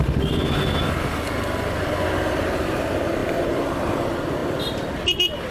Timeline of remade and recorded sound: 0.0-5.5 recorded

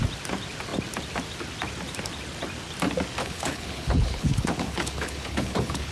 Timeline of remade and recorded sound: 0.0-3.2 recorded; 3.2-5.9 remade

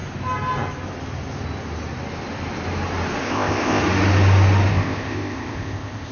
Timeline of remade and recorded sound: 0.0-3.2 recorded; 3.2-3.8 remade; 3.8-4.7 recorded; 4.7-6.1 remade